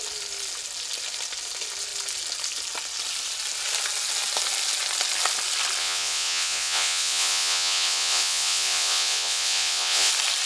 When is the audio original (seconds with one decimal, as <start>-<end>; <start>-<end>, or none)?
0.0-5.8; 10.1-10.5